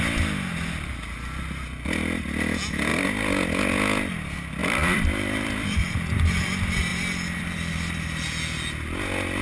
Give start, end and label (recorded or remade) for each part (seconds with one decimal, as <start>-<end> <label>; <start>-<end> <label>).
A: 0.0-4.6 recorded; 4.6-6.4 remade; 6.4-9.4 recorded

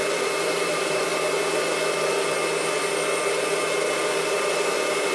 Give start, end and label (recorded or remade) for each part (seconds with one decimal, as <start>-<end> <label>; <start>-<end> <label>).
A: 0.0-1.1 remade; 1.1-3.2 recorded; 3.2-5.1 remade

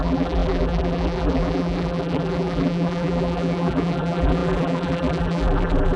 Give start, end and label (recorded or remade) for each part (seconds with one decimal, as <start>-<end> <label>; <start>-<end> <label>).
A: 0.0-6.0 remade

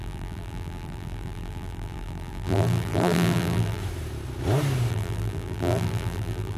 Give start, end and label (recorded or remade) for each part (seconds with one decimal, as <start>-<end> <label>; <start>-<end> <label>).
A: 0.0-3.8 remade; 3.8-4.9 recorded; 4.9-6.6 remade

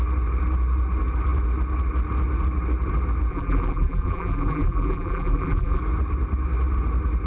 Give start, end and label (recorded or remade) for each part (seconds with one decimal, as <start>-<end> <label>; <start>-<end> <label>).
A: 0.0-3.3 recorded; 3.3-5.8 remade; 5.8-7.3 recorded

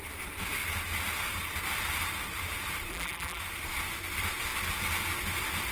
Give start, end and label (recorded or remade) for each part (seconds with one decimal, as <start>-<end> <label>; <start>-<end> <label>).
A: 0.0-2.9 recorded; 2.9-3.4 remade; 3.4-5.7 recorded